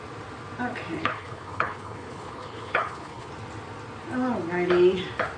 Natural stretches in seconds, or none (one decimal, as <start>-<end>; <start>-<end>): 0.0-1.0; 3.3-5.4